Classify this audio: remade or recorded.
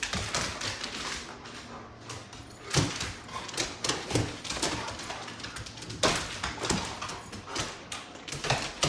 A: recorded